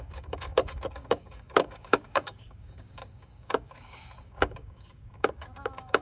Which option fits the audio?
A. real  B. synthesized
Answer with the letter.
B